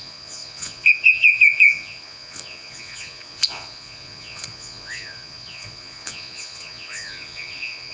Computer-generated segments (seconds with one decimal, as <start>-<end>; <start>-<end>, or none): 0.0-7.9